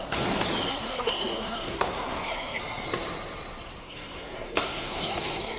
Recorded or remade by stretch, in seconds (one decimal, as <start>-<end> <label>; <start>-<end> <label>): 0.0-0.7 recorded; 0.7-2.6 remade; 2.6-3.8 recorded; 3.8-5.6 remade